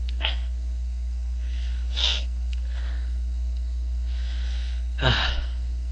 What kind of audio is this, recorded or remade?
remade